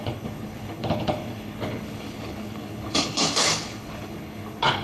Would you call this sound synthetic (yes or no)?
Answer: yes